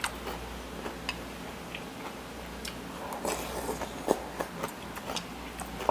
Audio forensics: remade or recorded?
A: recorded